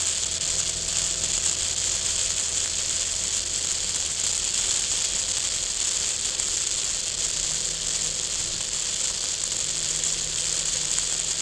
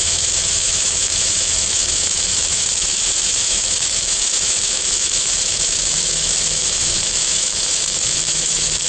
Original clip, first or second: first